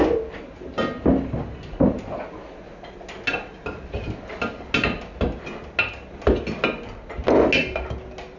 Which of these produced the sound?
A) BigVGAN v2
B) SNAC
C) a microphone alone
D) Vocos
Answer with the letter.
C